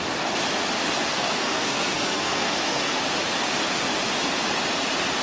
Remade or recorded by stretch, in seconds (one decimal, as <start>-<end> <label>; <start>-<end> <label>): 0.0-1.1 recorded; 1.1-3.0 remade; 3.0-5.2 recorded